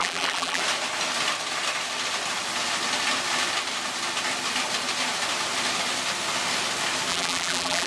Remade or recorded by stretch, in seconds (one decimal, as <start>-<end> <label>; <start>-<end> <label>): 0.0-0.6 remade; 0.6-7.1 recorded; 7.1-7.9 remade